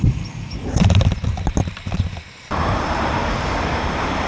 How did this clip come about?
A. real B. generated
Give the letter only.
B